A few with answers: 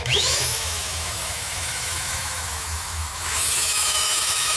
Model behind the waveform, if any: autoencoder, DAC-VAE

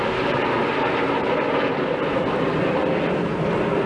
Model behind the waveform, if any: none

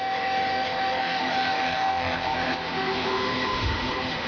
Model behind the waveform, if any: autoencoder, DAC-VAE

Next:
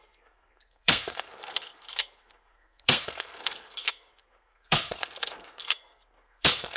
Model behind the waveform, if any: codec, SNAC